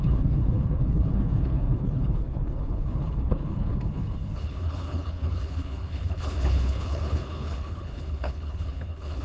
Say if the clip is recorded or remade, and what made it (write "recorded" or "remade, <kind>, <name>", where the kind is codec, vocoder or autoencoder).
remade, codec, HILCodec